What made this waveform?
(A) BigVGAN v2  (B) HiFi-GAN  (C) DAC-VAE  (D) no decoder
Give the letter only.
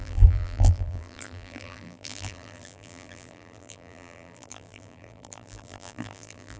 A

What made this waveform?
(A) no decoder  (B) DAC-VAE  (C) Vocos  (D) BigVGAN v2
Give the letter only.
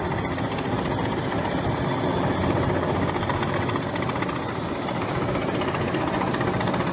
A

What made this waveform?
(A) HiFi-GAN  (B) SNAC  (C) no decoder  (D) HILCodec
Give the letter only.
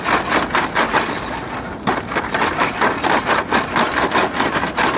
C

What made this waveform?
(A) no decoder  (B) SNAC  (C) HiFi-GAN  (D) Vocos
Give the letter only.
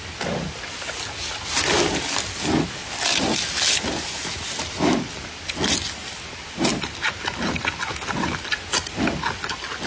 A